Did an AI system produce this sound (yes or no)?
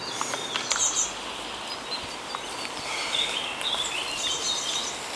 no